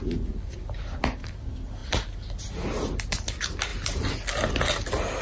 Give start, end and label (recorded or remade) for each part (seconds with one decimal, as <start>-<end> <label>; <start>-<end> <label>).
0.0-5.2 recorded